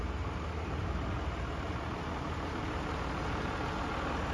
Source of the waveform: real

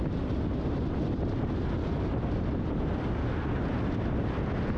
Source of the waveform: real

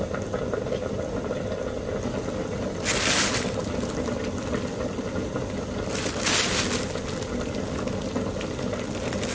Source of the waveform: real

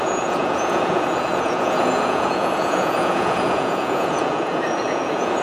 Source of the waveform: fake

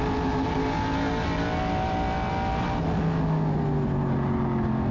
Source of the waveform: real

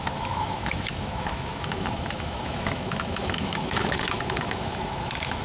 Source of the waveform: fake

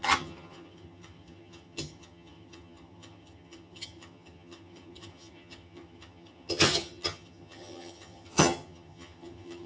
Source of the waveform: fake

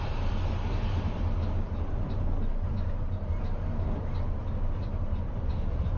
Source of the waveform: fake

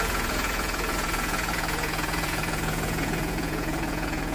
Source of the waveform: fake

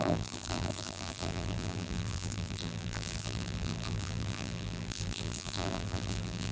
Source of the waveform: fake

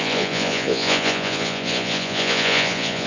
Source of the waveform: fake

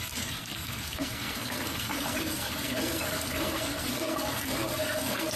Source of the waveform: fake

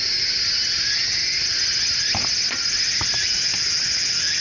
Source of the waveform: real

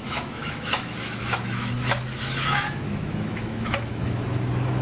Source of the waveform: fake